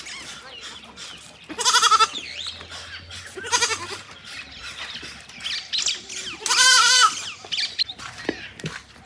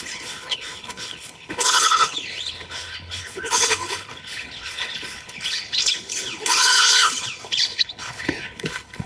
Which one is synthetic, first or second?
second